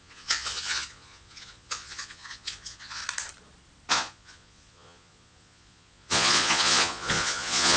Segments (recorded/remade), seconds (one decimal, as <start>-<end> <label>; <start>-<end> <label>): 0.0-3.0 remade; 3.0-3.9 recorded; 3.9-7.8 remade